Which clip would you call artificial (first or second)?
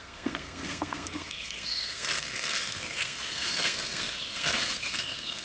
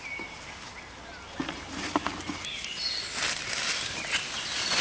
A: first